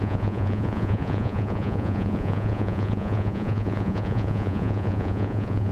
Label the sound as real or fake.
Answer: fake